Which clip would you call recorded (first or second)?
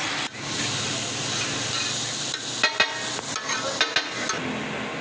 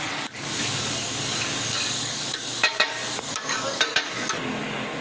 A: first